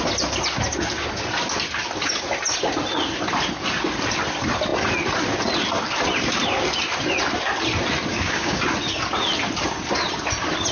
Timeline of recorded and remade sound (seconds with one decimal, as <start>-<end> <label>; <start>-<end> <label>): 0.0-8.1 recorded; 8.1-8.6 remade; 8.6-10.7 recorded